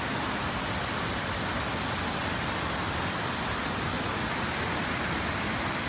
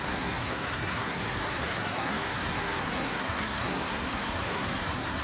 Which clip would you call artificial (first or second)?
second